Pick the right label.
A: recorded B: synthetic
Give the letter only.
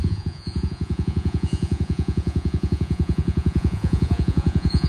B